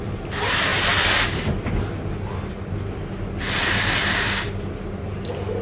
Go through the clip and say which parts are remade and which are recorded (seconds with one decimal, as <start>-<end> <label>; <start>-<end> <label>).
0.0-5.6 recorded